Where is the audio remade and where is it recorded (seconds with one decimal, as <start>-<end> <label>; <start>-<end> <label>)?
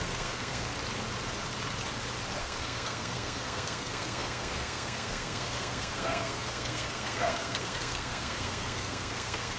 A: 0.0-0.7 remade; 0.7-2.4 recorded; 2.4-9.6 remade